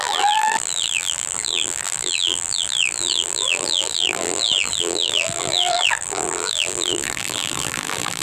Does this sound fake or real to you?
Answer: fake